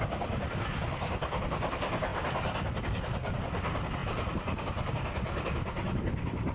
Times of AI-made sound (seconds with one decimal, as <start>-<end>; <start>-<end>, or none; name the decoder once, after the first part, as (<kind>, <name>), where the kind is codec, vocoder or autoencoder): 4.0-4.9 (vocoder, BigVGAN v2)